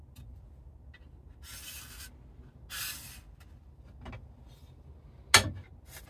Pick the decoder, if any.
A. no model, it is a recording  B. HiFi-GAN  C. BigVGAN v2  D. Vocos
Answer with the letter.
A